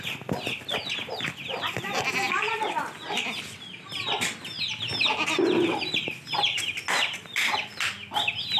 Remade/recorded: recorded